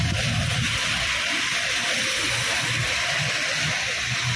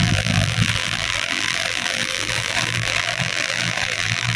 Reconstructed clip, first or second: second